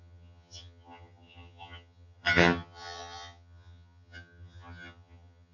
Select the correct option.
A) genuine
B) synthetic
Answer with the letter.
B